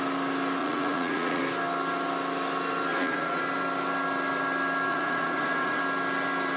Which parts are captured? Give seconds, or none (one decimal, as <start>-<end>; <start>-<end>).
0.0-0.6; 1.4-2.9; 3.4-4.9; 5.8-6.6